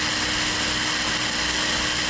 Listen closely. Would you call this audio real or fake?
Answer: real